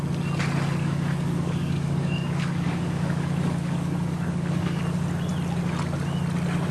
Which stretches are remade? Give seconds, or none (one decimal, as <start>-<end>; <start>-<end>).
0.8-4.8